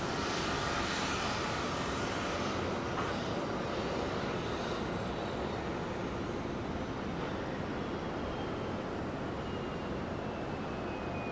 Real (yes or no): yes